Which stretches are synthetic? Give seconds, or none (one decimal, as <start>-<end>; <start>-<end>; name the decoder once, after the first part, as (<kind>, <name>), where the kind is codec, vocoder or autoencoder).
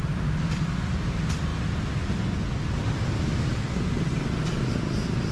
none